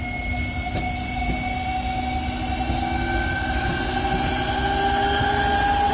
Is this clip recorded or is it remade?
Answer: recorded